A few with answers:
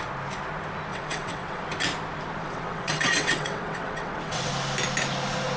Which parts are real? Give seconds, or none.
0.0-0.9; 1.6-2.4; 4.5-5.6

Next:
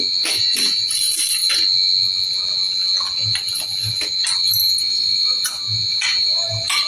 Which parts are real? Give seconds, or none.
0.0-6.9

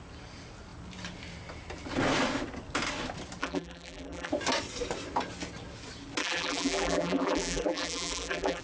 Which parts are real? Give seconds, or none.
0.0-3.4; 4.3-6.2

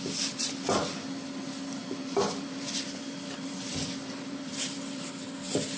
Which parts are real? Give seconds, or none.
0.0-1.8; 5.2-5.8